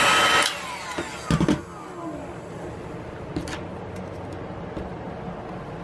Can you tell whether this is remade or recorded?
recorded